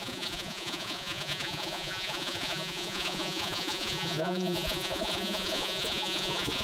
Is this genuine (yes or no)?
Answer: no